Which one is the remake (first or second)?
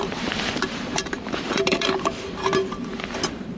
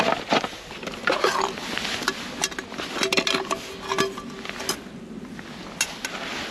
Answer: first